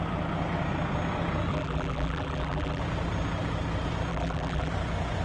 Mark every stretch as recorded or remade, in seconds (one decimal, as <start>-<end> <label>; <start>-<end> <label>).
0.0-1.5 recorded; 1.5-2.8 remade; 2.8-4.1 recorded; 4.1-4.7 remade; 4.7-5.2 recorded